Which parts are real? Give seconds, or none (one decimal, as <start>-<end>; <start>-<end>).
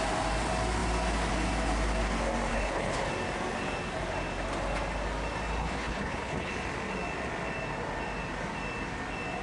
0.0-2.5; 3.1-5.6; 6.5-9.4